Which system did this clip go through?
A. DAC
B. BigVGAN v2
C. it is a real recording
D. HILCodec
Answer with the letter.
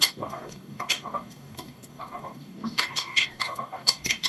A